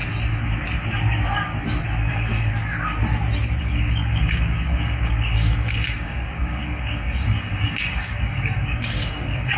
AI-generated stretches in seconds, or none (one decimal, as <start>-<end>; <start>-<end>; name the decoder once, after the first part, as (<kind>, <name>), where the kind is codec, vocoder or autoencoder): 2.1-2.5 (codec, DAC); 3.6-9.6